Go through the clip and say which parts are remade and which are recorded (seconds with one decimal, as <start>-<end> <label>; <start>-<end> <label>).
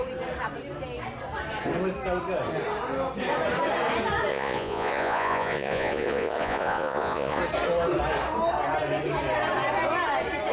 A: 0.0-4.3 recorded; 4.3-7.4 remade; 7.4-10.5 recorded